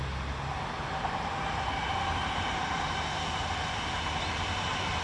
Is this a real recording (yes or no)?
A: yes